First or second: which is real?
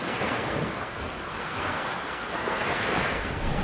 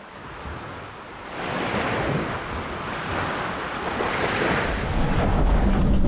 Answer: second